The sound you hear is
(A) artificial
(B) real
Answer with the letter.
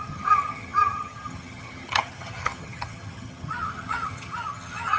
A